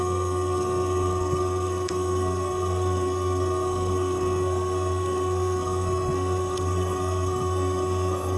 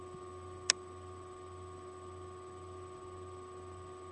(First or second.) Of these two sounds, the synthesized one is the first